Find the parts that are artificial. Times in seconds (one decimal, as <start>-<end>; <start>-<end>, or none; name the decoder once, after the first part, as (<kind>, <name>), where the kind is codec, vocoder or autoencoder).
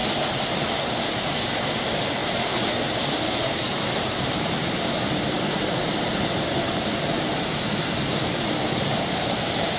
0.0-9.8 (vocoder, BigVGAN v2)